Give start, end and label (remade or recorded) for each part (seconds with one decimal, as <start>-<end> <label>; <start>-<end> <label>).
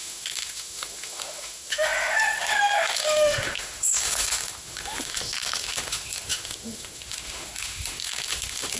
0.0-8.8 remade